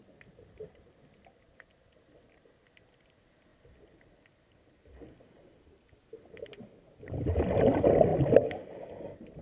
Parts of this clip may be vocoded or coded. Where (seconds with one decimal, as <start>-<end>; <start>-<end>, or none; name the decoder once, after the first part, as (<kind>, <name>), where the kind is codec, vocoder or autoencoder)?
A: none